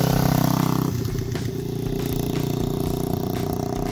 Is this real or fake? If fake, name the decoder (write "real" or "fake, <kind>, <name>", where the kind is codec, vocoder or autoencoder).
real